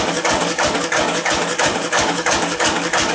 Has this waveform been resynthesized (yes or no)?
yes